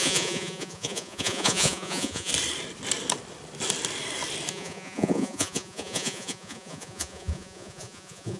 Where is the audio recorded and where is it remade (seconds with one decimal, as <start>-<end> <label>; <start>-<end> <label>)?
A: 0.0-2.3 remade; 2.3-4.5 recorded; 4.5-8.4 remade